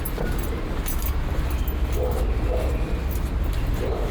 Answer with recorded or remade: recorded